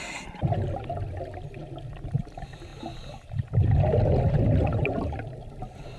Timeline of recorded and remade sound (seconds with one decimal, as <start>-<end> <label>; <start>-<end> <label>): 0.0-6.0 recorded